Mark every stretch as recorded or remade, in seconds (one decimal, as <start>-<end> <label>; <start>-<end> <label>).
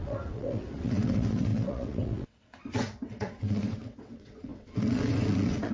0.0-5.7 remade